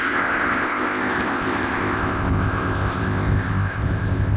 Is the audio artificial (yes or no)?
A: yes